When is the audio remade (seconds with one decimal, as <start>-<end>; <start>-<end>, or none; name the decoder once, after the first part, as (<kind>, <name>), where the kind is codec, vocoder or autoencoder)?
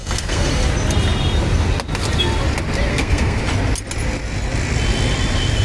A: 0.0-0.5 (codec, SNAC); 2.9-3.4